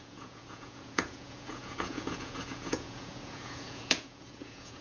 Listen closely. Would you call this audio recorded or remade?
remade